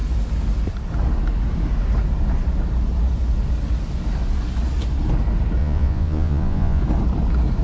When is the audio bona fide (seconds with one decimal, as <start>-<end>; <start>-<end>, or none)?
0.0-5.6; 6.8-7.6